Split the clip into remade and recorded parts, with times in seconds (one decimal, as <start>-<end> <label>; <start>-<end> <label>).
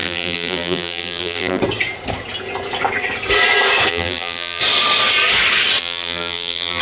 0.0-1.6 remade; 1.6-3.9 recorded; 3.9-4.6 remade; 4.6-5.8 recorded; 5.8-6.8 remade